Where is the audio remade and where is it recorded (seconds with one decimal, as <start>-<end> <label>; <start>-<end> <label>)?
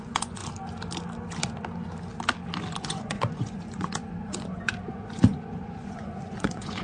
0.0-0.4 remade; 0.4-2.8 recorded; 2.8-6.8 remade